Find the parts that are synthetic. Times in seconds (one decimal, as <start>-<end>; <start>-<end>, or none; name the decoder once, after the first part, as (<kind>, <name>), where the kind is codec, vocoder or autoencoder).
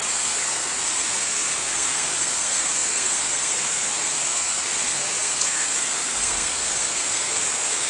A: 0.0-7.9 (codec, SNAC)